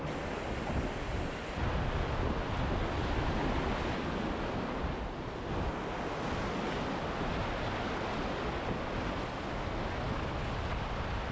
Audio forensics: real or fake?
real